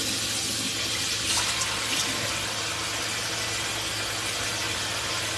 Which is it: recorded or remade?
recorded